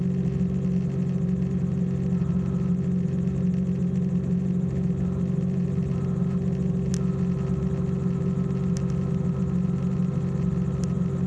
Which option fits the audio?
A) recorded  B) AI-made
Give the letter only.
A